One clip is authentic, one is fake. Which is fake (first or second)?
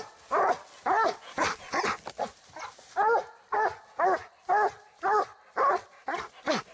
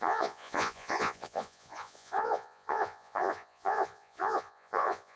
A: second